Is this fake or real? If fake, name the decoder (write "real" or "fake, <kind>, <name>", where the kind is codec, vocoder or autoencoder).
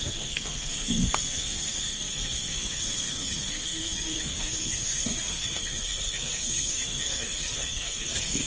fake, codec, SNAC